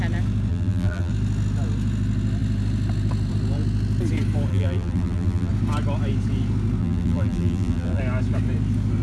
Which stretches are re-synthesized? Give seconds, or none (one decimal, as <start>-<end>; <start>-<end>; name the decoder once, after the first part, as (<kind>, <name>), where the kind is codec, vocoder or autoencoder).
0.5-1.1 (vocoder, BigVGAN v2); 4.5-5.5; 6.8-8.0